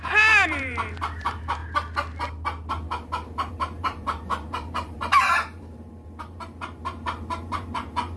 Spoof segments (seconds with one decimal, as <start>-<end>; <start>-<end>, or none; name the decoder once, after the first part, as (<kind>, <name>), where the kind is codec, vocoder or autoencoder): 0.0-1.6 (vocoder, BigVGAN v2); 3.5-8.2